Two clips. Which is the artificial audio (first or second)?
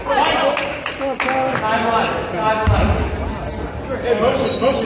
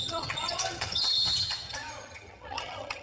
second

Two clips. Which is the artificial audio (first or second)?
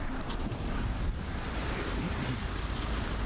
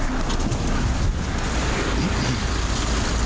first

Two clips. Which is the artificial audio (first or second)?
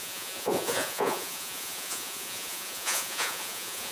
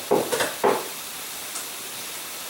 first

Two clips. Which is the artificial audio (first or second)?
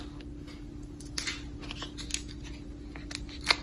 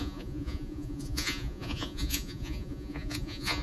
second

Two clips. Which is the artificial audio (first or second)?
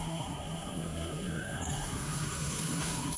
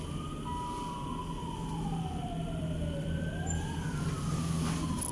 first